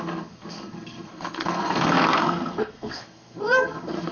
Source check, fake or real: fake